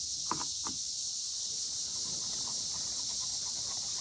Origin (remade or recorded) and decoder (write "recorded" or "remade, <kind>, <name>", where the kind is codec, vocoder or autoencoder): recorded